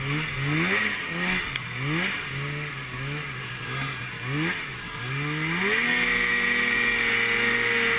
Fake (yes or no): no